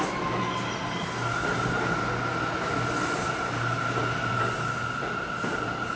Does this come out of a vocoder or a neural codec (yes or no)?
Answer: no